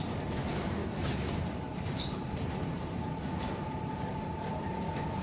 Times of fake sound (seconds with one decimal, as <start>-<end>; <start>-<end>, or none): 0.8-3.9